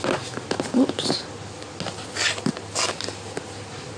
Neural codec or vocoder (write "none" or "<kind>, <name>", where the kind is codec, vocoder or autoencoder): none